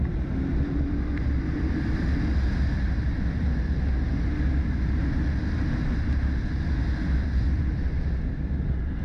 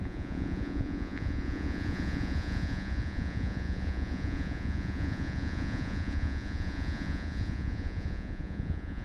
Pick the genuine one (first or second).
first